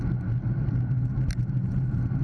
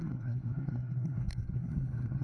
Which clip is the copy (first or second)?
second